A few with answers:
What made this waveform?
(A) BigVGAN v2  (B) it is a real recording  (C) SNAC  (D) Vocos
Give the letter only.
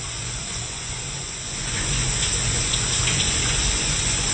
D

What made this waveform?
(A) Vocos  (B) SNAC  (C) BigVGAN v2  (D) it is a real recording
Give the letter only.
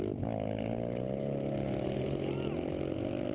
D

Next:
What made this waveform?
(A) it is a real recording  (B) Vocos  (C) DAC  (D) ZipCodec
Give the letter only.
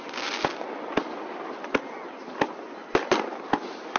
A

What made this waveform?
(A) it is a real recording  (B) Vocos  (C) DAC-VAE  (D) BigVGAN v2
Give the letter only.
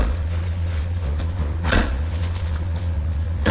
B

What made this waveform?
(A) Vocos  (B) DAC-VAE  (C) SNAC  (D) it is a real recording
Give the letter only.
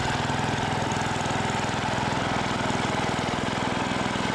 D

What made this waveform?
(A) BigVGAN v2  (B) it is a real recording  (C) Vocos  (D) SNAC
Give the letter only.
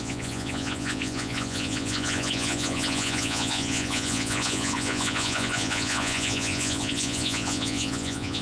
C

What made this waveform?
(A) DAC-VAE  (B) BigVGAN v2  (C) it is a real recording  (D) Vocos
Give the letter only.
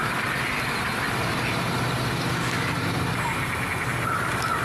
C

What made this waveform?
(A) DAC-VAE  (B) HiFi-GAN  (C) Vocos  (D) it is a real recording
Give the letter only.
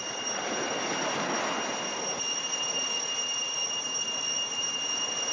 D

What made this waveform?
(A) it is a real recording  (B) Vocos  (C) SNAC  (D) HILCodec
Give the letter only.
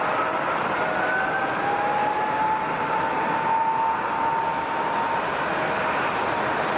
A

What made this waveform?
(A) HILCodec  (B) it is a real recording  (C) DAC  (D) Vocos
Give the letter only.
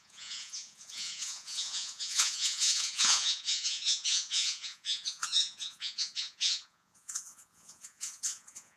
D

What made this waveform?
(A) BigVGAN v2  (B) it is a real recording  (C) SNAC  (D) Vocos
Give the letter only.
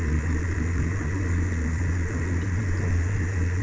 D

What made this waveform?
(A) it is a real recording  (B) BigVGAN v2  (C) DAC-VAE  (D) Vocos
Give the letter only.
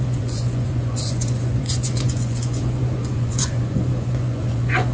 D